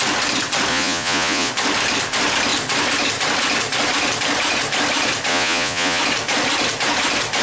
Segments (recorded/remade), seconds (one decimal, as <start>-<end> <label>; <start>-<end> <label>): 0.0-0.7 recorded; 0.7-1.5 remade; 1.5-5.3 recorded; 5.3-6.0 remade; 6.0-7.4 recorded